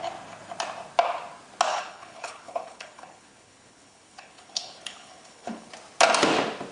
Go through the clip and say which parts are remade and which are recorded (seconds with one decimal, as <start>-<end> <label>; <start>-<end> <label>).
0.0-1.7 recorded; 1.7-5.7 remade; 5.7-6.7 recorded

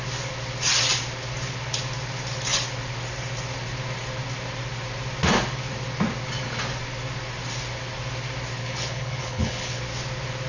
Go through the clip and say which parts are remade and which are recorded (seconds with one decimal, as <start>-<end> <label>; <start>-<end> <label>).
0.0-8.6 recorded; 8.6-9.8 remade; 9.8-10.5 recorded

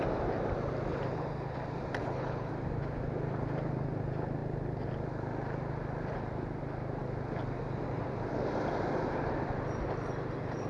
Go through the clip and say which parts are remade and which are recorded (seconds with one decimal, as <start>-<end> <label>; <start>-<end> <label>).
0.0-2.0 recorded; 2.0-2.5 remade; 2.5-10.7 recorded

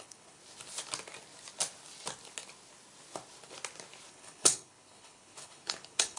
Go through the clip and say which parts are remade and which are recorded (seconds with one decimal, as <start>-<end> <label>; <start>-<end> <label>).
0.0-0.4 remade; 0.4-4.1 recorded; 4.1-6.2 remade

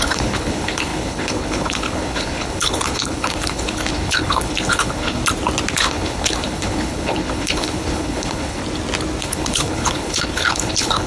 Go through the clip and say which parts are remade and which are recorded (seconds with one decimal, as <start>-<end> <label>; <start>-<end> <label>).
0.0-5.2 remade; 5.2-5.7 recorded; 5.7-8.6 remade; 8.6-9.2 recorded; 9.2-11.1 remade

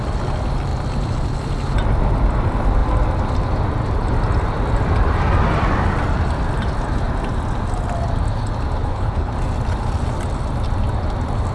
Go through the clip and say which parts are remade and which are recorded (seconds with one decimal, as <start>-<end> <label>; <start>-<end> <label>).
0.0-8.8 recorded; 8.8-9.3 remade; 9.3-11.5 recorded